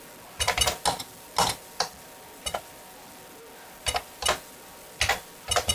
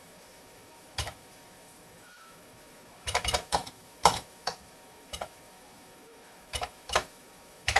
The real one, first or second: first